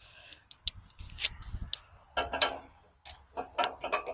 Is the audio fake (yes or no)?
no